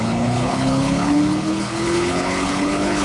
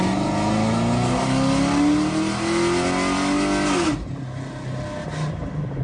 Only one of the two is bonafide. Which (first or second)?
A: second